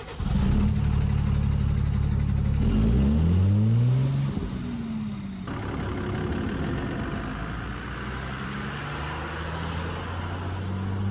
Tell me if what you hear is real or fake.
real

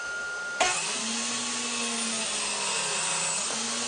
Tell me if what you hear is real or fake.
real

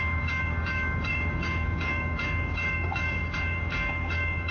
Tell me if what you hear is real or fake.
fake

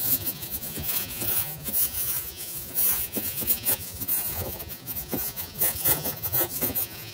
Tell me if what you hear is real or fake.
fake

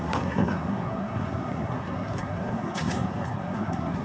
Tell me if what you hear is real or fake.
fake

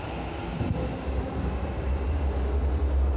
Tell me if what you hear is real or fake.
real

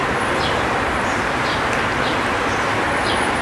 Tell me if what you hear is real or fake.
real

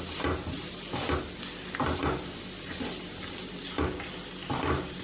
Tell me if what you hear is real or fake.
real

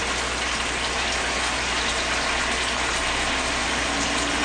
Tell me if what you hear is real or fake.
real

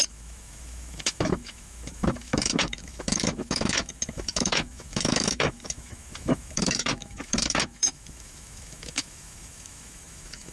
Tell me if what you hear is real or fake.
fake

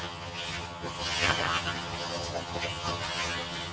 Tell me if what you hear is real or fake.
fake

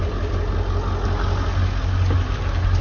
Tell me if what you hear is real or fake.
real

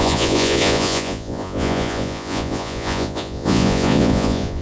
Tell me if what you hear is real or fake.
fake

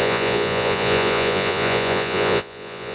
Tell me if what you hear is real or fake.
fake